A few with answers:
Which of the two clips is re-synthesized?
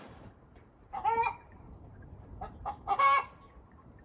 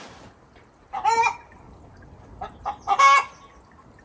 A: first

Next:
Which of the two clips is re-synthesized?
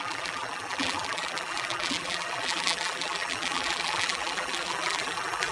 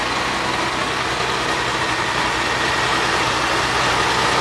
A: first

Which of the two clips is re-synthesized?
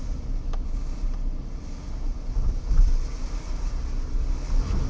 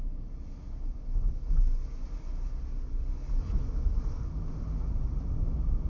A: first